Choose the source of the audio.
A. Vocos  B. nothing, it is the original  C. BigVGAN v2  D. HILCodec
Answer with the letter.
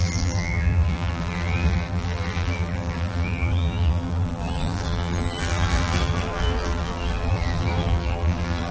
C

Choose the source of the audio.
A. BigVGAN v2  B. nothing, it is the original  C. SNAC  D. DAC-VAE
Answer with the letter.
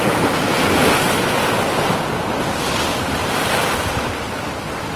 B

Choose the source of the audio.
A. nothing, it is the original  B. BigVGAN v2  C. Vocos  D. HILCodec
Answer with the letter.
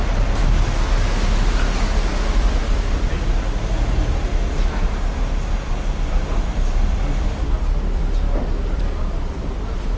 A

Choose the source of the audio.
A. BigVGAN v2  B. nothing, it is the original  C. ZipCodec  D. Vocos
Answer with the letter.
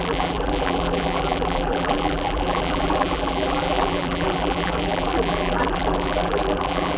A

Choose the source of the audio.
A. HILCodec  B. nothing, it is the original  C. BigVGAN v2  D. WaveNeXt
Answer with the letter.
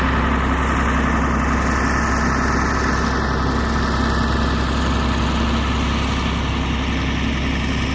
B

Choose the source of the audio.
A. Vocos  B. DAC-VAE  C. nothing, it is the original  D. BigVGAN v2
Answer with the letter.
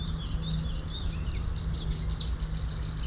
C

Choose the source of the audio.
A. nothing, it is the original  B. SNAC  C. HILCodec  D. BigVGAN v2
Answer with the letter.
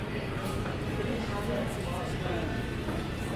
D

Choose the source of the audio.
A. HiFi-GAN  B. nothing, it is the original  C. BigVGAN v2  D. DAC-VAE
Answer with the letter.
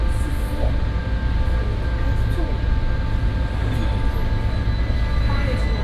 B